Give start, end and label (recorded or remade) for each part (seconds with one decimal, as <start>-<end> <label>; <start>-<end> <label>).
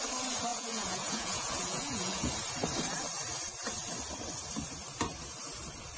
0.0-0.5 recorded; 0.5-2.3 remade; 2.3-6.0 recorded